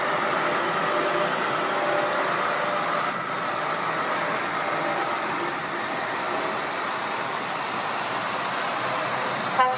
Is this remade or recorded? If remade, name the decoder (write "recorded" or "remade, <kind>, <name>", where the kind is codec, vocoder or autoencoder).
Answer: recorded